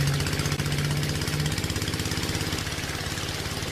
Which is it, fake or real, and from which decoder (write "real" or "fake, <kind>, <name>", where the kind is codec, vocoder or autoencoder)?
real